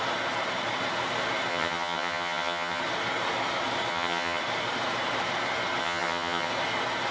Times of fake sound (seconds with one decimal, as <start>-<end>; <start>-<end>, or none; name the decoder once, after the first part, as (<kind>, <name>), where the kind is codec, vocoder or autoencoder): 1.5-2.8 (vocoder, HiFi-GAN); 3.9-4.4; 5.8-6.5